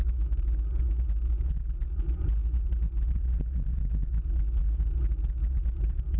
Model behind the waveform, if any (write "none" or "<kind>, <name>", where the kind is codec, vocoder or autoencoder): none